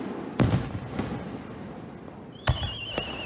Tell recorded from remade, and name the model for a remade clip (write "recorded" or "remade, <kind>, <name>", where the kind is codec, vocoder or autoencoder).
recorded